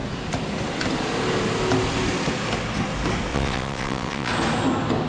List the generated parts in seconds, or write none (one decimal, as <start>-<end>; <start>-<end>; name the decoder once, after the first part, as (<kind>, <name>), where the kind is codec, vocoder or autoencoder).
3.3-4.3 (vocoder, WaveNeXt)